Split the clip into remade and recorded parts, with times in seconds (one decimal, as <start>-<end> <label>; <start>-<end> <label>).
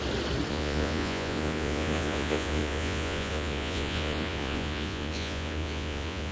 0.0-0.5 recorded; 0.5-6.3 remade